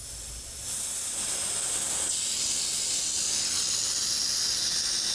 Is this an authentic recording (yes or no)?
yes